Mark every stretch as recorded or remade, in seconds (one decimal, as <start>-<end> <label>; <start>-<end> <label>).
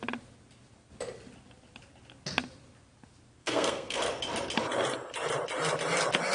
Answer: 0.0-3.4 recorded; 3.4-4.0 remade; 4.0-6.3 recorded